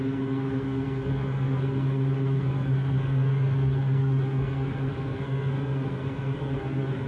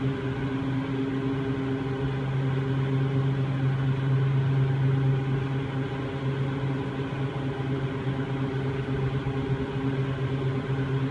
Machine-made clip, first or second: first